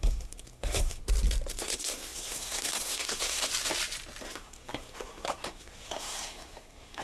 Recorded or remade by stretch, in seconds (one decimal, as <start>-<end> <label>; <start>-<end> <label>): 0.0-1.0 remade; 1.0-1.5 recorded; 1.5-3.5 remade; 3.5-4.2 recorded; 4.2-7.0 remade